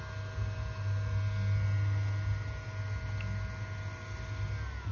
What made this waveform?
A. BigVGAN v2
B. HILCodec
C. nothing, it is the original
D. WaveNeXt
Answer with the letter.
C